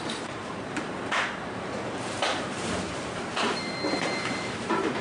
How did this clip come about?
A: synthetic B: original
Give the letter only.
A